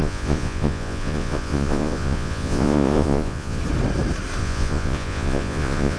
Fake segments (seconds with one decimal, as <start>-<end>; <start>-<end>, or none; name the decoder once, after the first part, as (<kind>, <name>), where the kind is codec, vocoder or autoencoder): 0.0-3.6 (vocoder, Vocos); 4.4-6.0